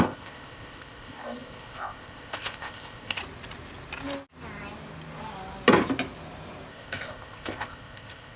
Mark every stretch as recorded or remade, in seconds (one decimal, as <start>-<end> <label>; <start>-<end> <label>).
0.0-3.2 remade; 3.2-6.7 recorded; 6.7-8.4 remade